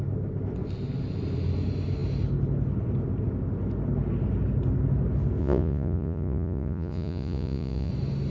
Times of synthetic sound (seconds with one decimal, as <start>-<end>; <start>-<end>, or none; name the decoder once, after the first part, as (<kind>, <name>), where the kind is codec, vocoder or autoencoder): 5.4-7.9 (vocoder, Vocos)

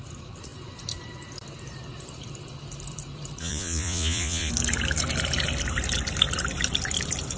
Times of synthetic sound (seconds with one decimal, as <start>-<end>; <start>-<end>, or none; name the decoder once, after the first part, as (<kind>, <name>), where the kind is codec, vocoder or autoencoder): 3.4-4.5 (vocoder, Vocos)

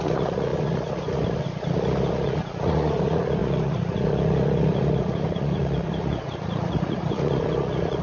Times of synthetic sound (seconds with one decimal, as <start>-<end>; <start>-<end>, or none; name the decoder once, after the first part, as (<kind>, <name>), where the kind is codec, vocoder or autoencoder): 0.0-8.0 (vocoder, Vocos)

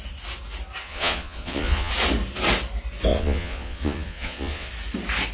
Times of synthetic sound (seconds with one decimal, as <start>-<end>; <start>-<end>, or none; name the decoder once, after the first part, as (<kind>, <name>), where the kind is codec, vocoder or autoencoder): 0.8-1.9 (vocoder, Vocos); 3.1-4.7

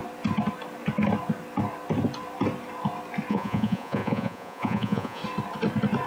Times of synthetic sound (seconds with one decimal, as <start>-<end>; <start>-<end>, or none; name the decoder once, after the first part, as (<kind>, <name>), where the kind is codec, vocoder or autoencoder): 3.3-5.2 (vocoder, Vocos)